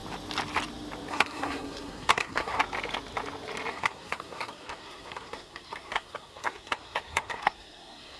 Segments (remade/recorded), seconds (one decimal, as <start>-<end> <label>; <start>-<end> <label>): 0.0-1.1 recorded; 1.1-2.6 remade; 2.6-3.7 recorded; 3.7-8.2 remade